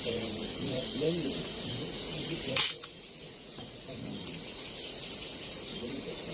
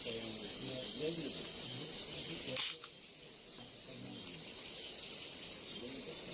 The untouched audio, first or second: second